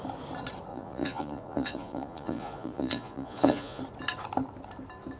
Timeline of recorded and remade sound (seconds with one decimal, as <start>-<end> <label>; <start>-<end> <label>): 0.0-0.7 recorded; 0.7-3.8 remade; 3.8-5.2 recorded